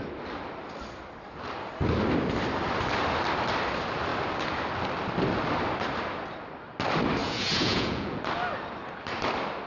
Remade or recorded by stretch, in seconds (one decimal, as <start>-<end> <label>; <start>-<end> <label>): 0.0-7.2 recorded; 7.2-8.2 remade; 8.2-9.7 recorded